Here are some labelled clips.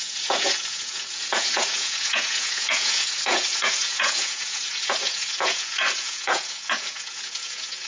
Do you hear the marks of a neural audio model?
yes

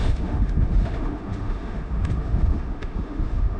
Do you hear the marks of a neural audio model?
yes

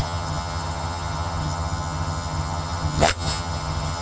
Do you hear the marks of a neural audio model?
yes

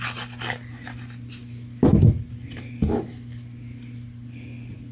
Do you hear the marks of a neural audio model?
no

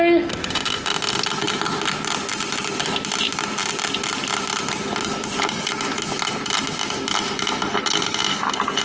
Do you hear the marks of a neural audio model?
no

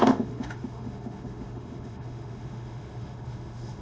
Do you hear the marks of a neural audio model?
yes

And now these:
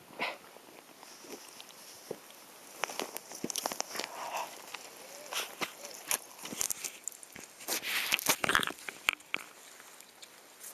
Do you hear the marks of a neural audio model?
no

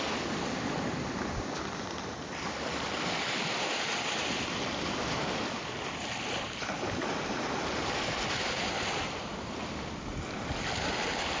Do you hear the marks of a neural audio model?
no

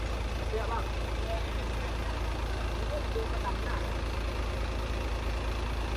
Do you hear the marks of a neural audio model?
no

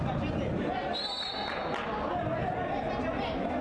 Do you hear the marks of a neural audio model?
no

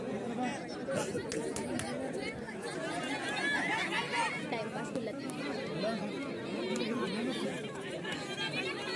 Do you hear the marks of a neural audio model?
no